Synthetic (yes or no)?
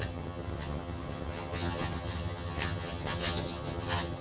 yes